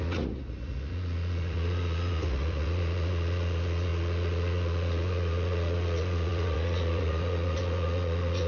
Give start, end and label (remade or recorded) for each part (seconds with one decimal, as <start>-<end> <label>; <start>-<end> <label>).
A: 0.0-8.5 remade